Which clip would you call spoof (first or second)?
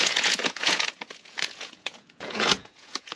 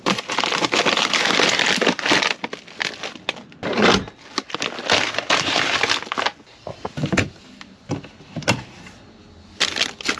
first